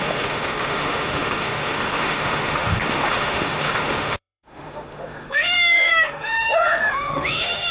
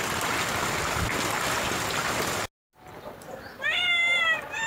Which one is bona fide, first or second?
second